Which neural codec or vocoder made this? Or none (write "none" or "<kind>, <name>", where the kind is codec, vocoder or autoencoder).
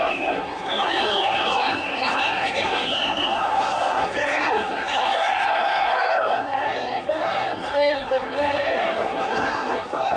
codec, SNAC